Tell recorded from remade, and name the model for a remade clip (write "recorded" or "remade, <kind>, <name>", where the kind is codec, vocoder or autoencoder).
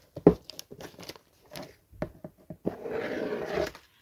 remade, vocoder, BigVGAN v2